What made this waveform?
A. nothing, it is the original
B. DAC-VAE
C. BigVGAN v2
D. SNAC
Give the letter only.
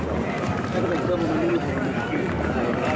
A